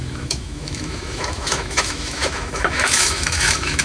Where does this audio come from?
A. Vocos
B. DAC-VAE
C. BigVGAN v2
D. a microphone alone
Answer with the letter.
B